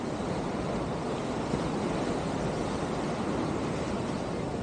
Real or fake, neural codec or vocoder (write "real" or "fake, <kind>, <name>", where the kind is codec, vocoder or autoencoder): real